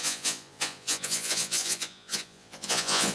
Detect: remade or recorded remade